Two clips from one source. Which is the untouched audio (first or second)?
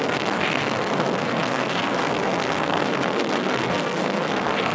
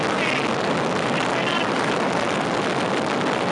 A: second